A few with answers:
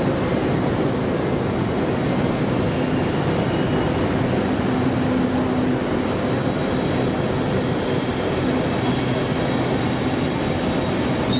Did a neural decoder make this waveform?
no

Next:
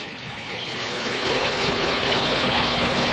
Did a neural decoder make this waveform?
yes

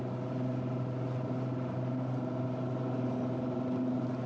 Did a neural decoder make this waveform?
no